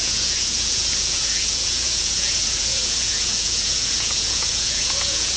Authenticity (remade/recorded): remade